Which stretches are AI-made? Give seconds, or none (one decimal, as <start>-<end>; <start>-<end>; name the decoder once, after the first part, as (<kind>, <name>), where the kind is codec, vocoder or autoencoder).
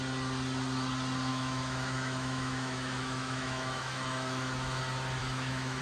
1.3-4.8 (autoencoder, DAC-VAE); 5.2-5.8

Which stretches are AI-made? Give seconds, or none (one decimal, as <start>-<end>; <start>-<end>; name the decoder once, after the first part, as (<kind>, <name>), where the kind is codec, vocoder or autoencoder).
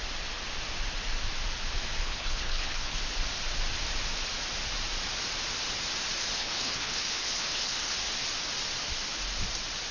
2.0-3.0 (codec, HILCodec); 6.2-7.9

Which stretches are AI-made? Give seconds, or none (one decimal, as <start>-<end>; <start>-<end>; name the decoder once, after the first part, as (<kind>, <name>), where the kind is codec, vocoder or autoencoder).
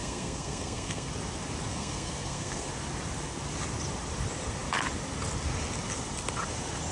0.0-1.1 (codec, SNAC); 1.7-2.7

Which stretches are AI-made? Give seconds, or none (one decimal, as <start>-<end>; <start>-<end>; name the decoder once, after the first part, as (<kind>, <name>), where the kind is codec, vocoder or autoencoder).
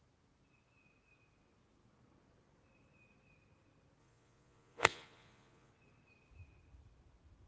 4.0-5.7 (vocoder, Vocos)